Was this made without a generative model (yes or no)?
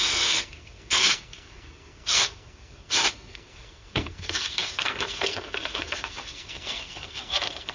no